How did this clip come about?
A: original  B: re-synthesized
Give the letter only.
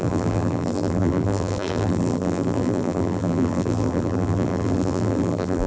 B